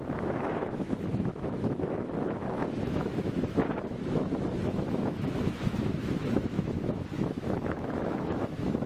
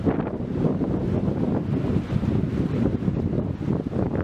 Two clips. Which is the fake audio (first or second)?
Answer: first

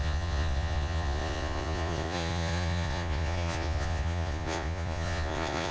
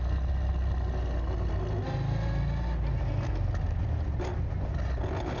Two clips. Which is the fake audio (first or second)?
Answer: first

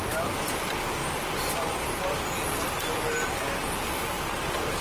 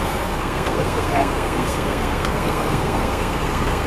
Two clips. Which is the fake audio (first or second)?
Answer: second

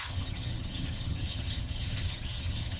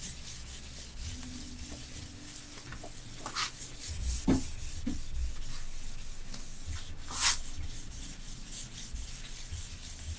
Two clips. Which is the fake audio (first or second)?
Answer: first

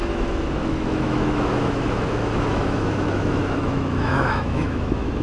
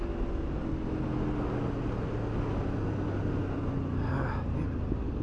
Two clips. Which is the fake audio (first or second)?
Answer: first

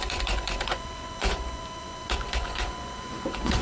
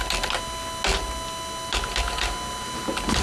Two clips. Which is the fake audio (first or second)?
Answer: first